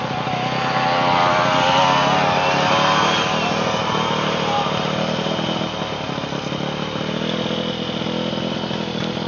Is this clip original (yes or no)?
yes